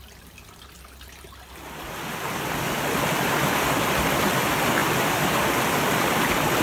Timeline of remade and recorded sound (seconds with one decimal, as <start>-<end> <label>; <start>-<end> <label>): 0.0-4.8 recorded; 4.8-6.6 remade